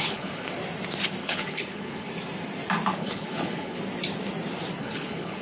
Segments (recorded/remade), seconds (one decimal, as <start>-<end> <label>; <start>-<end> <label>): 0.0-0.5 remade; 0.5-1.2 recorded; 1.2-2.1 remade; 2.1-3.0 recorded; 3.0-3.8 remade; 3.8-4.8 recorded; 4.8-5.4 remade